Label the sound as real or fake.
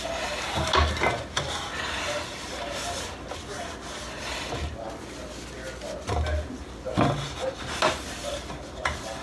real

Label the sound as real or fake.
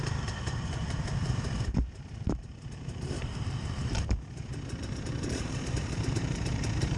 fake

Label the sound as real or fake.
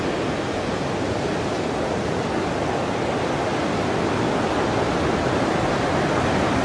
real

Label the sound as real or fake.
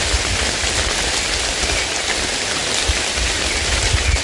real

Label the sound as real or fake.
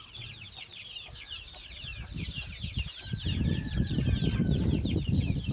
fake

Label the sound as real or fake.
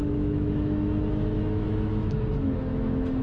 fake